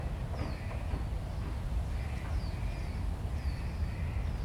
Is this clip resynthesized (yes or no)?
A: no